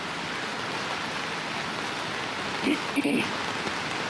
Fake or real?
real